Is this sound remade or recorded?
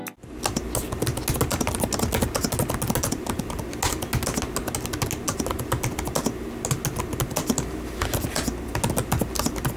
recorded